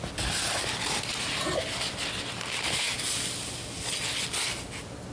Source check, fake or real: real